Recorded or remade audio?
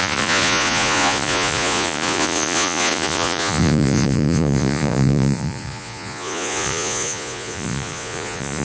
remade